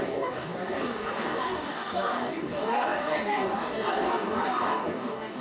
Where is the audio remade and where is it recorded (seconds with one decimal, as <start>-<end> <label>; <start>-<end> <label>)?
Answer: 0.0-5.4 remade